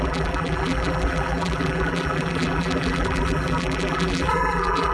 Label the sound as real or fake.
fake